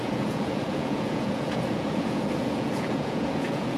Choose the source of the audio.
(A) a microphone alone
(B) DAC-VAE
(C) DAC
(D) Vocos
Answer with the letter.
D